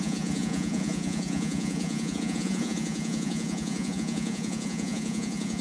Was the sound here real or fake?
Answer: fake